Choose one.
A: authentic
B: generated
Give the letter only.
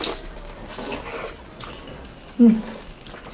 B